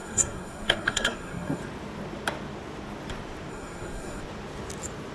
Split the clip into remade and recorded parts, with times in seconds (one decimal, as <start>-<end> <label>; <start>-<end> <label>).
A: 0.0-1.6 remade; 1.6-3.5 recorded; 3.5-4.2 remade; 4.2-5.1 recorded